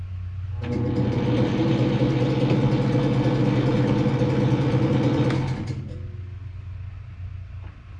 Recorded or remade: recorded